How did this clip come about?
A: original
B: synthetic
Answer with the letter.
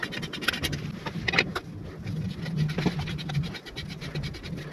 A